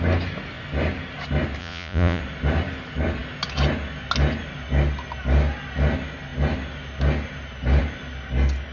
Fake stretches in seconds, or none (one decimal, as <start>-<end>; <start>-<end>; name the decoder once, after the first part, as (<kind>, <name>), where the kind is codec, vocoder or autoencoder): 1.6-2.2 (vocoder, Vocos)